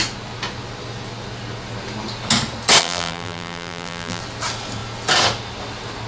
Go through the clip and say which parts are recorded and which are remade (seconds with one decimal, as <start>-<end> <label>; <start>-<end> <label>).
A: 0.0-2.8 recorded; 2.8-4.2 remade; 4.2-6.1 recorded